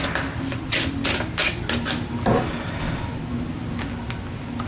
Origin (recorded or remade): recorded